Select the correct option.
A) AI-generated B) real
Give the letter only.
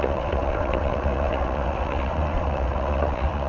A